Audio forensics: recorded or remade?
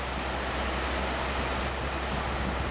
recorded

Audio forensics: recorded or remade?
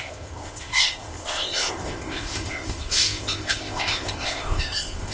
remade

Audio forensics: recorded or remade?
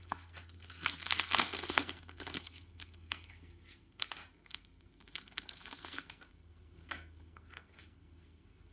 remade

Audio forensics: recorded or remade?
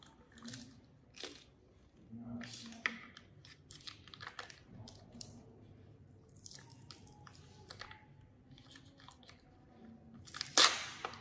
recorded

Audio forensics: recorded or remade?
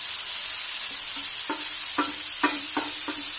recorded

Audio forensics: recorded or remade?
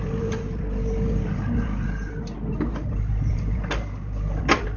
recorded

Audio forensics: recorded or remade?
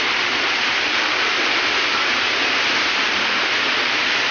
recorded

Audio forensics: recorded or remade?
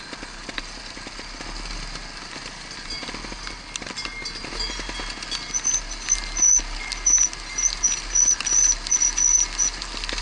recorded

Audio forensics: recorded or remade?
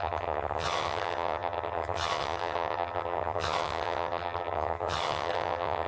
remade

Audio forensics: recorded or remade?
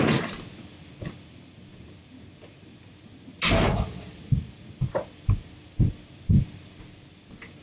recorded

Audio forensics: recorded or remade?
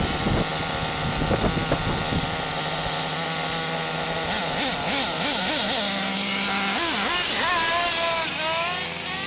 recorded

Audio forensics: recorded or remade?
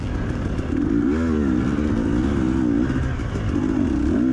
recorded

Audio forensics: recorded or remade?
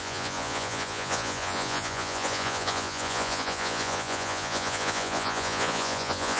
remade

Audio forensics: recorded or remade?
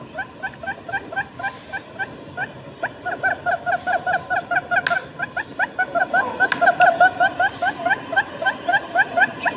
recorded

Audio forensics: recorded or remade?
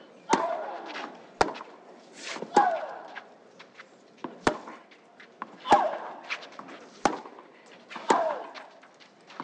recorded